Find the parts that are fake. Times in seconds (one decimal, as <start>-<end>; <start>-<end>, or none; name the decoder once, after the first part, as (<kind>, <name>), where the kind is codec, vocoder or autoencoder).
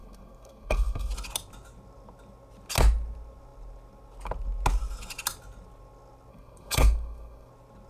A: 0.0-1.1 (codec, SNAC); 6.3-7.5